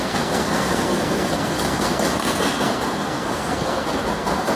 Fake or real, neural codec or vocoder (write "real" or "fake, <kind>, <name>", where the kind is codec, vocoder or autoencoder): fake, codec, SNAC